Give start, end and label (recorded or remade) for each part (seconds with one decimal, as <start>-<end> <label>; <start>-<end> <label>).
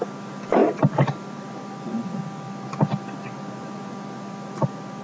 0.0-5.0 recorded